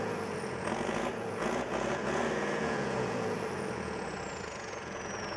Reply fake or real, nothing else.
fake